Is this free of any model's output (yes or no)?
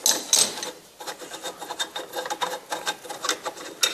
yes